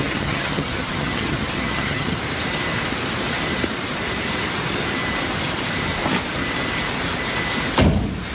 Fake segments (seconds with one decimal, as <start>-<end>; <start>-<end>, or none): 0.0-2.2